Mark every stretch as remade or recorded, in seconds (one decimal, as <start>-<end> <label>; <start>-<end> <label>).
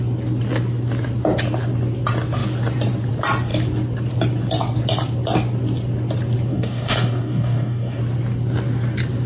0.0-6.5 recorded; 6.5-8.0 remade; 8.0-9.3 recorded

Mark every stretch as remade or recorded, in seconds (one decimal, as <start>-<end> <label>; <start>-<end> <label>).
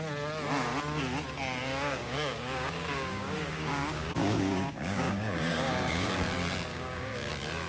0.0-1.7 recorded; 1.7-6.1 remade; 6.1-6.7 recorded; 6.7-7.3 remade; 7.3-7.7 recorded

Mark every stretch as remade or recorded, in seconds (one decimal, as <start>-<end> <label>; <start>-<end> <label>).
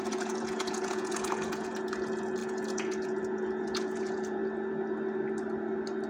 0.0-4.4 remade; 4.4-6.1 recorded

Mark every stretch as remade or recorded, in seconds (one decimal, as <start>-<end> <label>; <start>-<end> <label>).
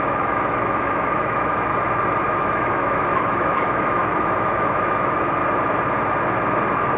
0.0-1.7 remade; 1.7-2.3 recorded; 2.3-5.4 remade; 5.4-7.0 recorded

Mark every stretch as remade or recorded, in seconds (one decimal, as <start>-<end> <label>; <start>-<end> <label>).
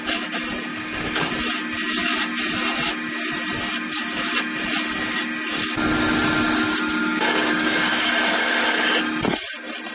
0.0-0.7 recorded; 0.7-1.3 remade; 1.3-7.0 recorded; 7.0-8.1 remade; 8.1-9.9 recorded